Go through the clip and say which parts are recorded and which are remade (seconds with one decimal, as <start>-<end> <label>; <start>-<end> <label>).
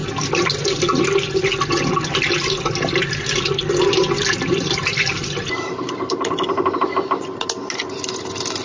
0.0-8.6 recorded